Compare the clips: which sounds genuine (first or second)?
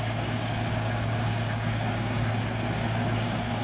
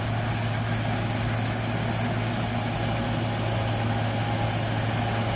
second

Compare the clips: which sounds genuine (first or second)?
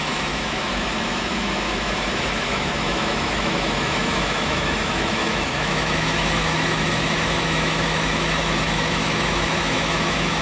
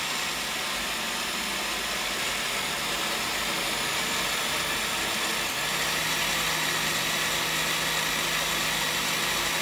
second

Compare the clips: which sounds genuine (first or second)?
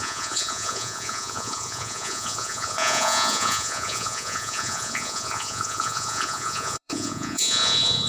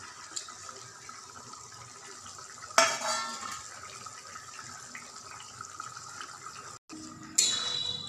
second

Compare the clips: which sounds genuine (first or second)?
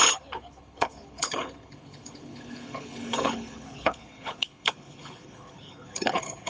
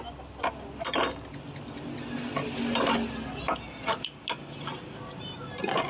second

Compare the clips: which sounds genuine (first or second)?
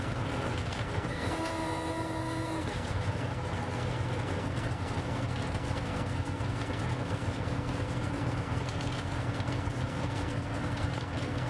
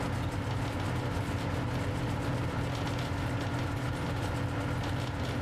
second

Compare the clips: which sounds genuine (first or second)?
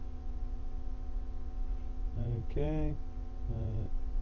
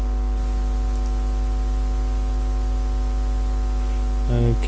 second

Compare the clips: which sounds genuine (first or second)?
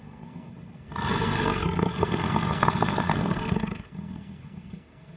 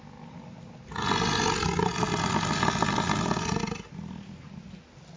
second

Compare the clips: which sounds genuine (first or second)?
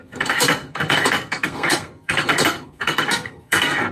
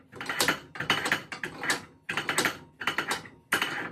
second